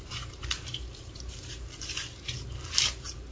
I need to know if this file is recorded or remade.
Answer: remade